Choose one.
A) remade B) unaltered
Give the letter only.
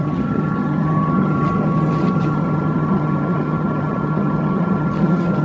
A